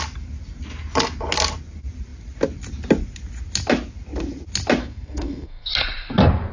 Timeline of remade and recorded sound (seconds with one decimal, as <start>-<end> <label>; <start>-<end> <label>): 0.0-4.8 recorded; 4.8-5.7 remade; 5.7-6.5 recorded